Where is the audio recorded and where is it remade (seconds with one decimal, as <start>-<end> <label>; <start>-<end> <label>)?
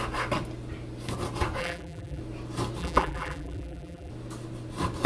0.0-1.6 recorded; 1.6-2.2 remade; 2.2-2.8 recorded; 2.8-4.1 remade; 4.1-5.1 recorded